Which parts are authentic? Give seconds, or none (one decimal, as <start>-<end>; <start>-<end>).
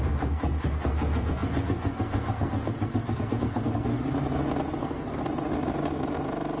3.9-4.8; 5.2-6.6